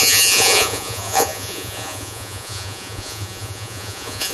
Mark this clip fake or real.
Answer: fake